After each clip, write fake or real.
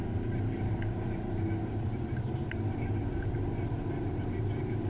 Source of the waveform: real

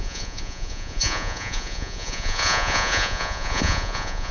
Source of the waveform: fake